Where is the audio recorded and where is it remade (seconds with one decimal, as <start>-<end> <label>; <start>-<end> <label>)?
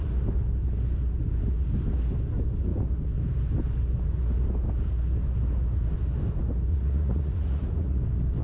0.0-6.7 recorded; 6.7-8.0 remade; 8.0-8.4 recorded